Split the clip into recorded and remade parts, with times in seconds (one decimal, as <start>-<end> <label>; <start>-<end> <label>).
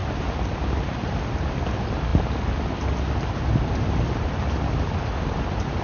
0.0-5.8 recorded